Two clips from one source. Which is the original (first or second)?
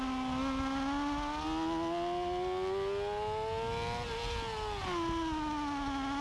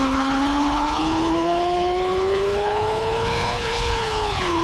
first